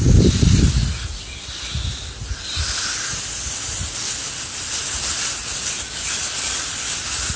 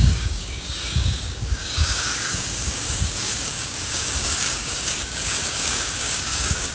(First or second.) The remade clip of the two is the second